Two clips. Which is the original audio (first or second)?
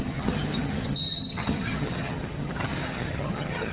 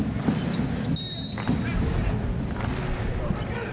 second